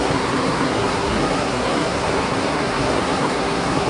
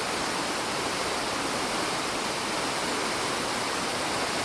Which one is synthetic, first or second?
first